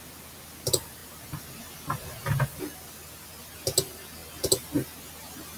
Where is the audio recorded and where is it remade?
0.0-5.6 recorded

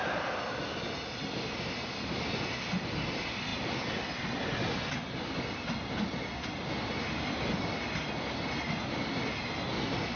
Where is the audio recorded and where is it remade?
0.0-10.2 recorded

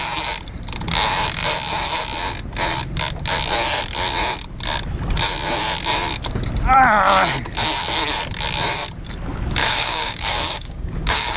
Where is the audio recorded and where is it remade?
0.0-9.6 recorded; 9.6-11.4 remade

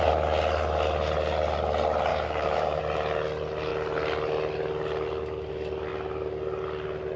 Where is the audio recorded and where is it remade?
0.0-2.1 recorded; 2.1-2.8 remade; 2.8-7.2 recorded